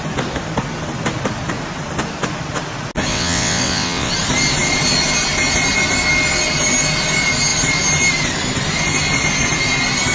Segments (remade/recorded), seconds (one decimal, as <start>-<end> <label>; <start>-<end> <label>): 0.0-3.1 recorded; 3.1-4.1 remade; 4.1-10.1 recorded